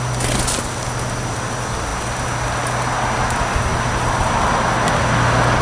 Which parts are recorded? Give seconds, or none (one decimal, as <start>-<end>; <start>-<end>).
0.0-5.6